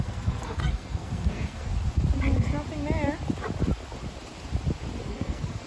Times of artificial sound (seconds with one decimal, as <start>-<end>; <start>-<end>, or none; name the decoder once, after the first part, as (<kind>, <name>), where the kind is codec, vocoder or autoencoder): 0.0-1.7 (codec, SNAC); 5.1-5.7